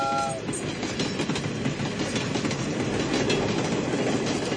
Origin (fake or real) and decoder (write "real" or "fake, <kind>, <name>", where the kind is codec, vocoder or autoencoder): real